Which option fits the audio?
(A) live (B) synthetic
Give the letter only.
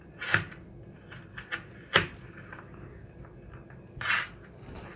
A